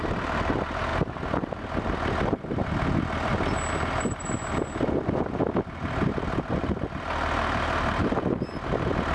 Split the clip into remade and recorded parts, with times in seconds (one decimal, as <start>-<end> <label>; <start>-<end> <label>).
0.0-9.1 recorded